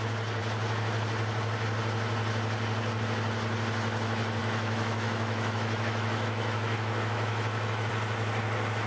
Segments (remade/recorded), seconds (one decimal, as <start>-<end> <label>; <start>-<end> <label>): 0.0-4.4 recorded; 4.4-7.9 remade; 7.9-8.9 recorded